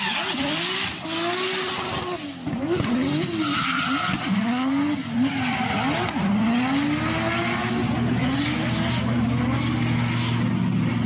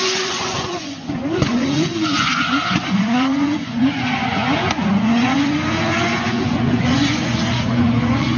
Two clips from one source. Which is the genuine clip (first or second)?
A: first